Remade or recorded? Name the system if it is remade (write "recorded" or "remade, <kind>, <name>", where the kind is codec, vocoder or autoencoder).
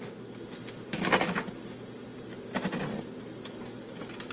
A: recorded